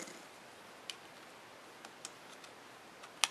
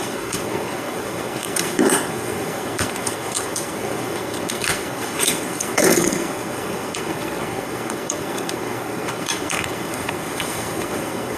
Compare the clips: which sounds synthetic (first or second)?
second